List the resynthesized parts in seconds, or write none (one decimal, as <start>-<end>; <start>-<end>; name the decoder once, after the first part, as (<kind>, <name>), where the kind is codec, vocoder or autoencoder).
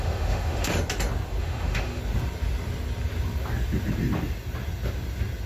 0.0-0.7 (autoencoder, DAC-VAE); 1.4-2.0